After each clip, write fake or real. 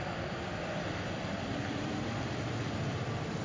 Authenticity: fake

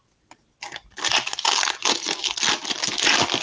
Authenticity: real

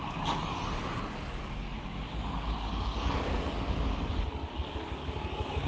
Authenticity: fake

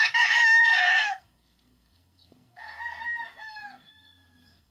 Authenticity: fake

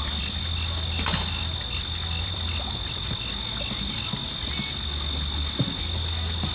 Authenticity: real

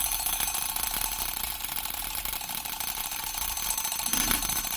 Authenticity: real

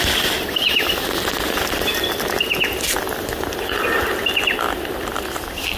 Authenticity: real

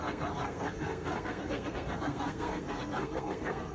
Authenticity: fake